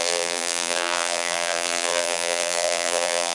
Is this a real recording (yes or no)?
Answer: no